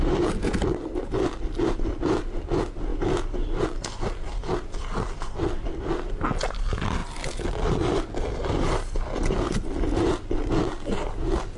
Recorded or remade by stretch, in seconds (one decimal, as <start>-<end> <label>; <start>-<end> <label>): 0.0-11.6 recorded